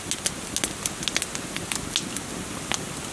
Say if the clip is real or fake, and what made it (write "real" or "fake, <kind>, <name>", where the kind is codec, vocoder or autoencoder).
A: real